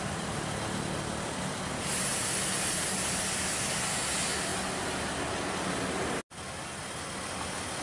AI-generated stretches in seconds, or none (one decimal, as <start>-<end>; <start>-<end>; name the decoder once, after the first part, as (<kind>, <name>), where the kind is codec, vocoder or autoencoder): none